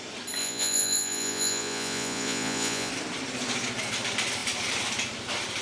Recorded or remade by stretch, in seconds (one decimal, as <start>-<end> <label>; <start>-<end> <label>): 0.0-0.4 recorded; 0.4-2.9 remade; 2.9-5.6 recorded